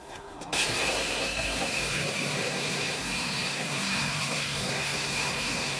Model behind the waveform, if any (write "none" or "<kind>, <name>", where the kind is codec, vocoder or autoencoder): codec, SNAC